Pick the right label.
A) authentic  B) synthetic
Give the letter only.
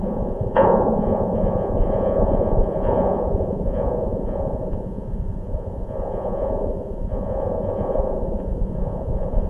B